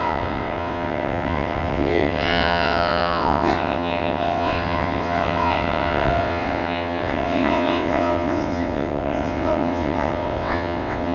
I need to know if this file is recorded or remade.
remade